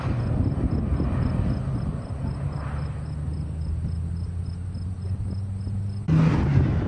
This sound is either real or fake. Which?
real